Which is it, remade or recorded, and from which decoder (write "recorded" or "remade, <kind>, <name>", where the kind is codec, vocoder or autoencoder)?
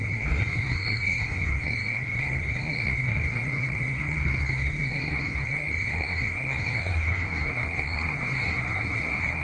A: remade, codec, SNAC